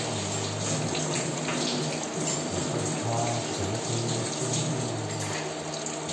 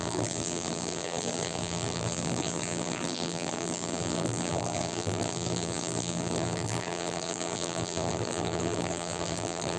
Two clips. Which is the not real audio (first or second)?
second